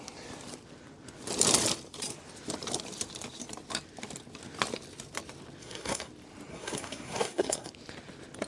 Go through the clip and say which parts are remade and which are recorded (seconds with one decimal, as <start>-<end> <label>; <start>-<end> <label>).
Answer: 0.0-5.6 recorded; 5.6-6.1 remade; 6.1-6.5 recorded; 6.5-7.7 remade; 7.7-8.5 recorded